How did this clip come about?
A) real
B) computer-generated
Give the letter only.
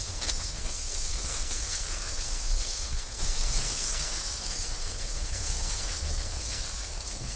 B